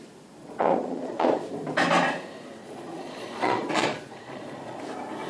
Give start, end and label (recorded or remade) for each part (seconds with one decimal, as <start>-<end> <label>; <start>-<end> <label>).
0.0-0.4 recorded; 0.4-1.4 remade; 1.4-2.6 recorded; 2.6-4.8 remade; 4.8-5.3 recorded